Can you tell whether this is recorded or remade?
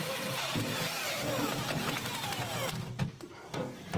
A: remade